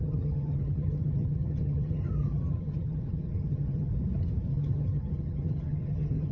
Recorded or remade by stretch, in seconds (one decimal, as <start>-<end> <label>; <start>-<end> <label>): 0.0-3.9 remade; 3.9-4.5 recorded; 4.5-6.3 remade